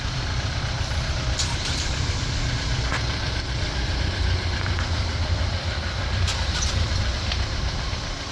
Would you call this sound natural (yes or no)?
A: no